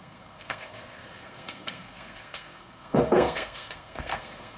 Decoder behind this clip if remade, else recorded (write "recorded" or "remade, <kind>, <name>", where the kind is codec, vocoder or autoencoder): remade, codec, SNAC